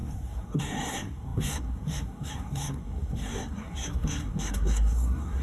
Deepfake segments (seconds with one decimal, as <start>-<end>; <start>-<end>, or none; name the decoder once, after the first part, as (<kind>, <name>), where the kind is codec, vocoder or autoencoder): 0.0-5.4 (codec, SNAC)